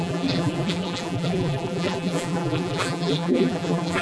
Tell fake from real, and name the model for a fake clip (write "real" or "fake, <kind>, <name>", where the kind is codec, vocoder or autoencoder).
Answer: fake, vocoder, BigVGAN v2